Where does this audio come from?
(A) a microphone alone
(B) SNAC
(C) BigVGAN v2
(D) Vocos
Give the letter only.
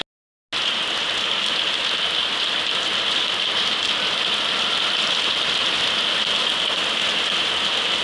A